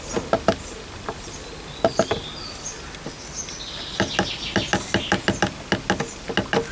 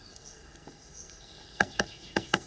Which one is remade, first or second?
second